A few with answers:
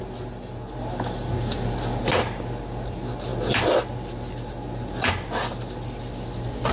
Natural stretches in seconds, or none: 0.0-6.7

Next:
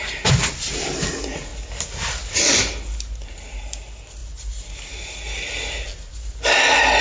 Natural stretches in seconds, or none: 0.0-7.0

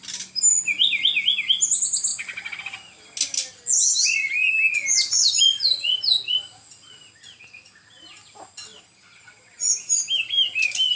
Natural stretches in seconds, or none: 0.0-10.9

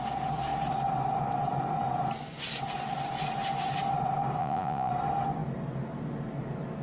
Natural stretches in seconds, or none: 0.0-4.4; 4.9-6.8

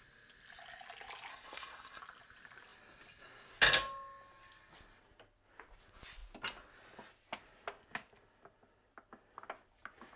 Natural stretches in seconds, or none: 0.0-1.3; 2.0-10.2